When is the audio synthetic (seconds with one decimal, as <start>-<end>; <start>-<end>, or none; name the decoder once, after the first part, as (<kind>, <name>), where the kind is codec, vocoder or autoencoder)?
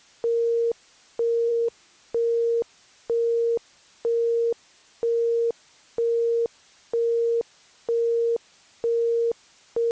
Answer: 1.5-2.0 (autoencoder, DAC-VAE)